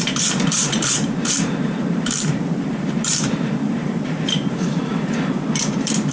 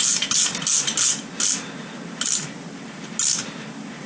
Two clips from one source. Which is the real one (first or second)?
second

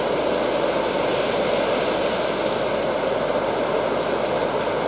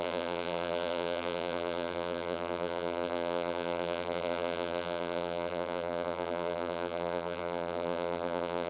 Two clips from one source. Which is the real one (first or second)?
first